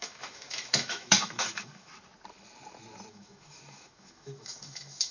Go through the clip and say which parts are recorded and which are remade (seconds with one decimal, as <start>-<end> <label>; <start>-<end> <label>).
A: 0.0-1.9 remade; 1.9-3.1 recorded; 3.1-5.1 remade

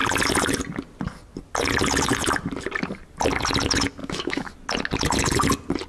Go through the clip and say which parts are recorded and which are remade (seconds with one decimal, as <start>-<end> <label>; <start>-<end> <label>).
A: 0.0-4.0 recorded; 4.0-4.5 remade; 4.5-5.9 recorded

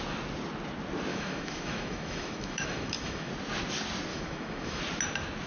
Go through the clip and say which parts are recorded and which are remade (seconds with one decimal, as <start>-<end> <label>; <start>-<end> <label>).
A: 0.0-1.1 recorded; 1.1-3.3 remade; 3.3-4.1 recorded; 4.1-4.8 remade; 4.8-5.5 recorded